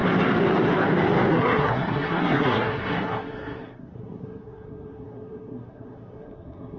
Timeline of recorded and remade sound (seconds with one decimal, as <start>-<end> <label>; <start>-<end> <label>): 0.0-1.3 recorded; 1.3-6.8 remade